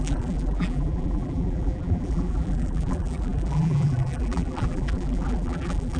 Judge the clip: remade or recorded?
remade